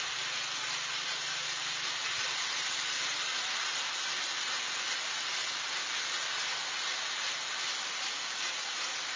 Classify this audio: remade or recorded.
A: recorded